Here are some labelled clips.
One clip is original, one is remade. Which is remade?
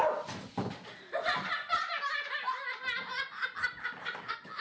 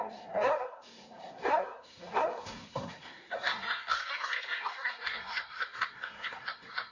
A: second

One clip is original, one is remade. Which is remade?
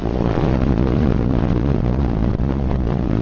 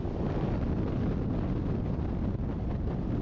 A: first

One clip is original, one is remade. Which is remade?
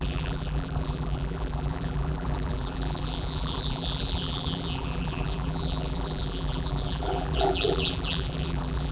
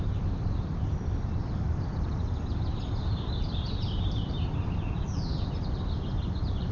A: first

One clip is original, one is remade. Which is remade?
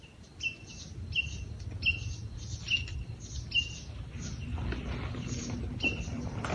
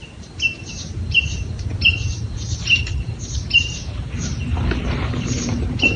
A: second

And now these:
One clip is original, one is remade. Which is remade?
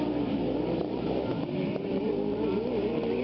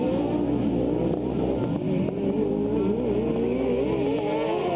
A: first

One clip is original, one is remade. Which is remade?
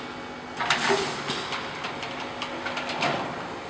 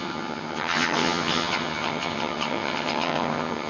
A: second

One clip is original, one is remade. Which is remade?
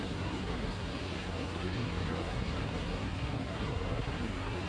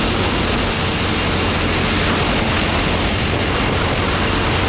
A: first